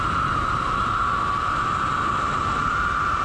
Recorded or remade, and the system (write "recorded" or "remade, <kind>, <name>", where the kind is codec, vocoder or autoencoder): recorded